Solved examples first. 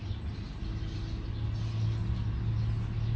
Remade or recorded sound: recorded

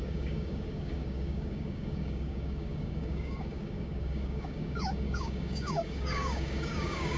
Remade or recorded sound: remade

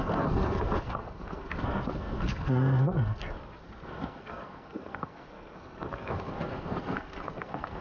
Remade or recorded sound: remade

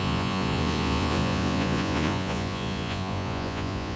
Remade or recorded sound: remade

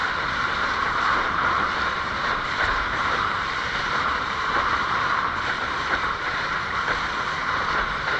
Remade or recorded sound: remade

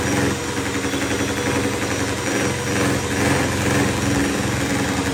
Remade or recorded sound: recorded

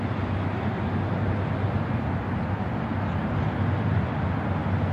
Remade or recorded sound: recorded